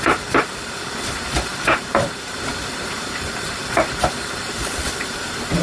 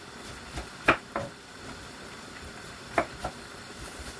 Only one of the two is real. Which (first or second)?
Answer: second